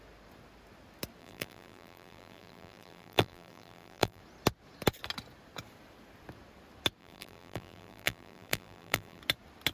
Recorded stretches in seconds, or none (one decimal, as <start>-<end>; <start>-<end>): 0.0-1.2; 4.2-7.0; 9.2-9.7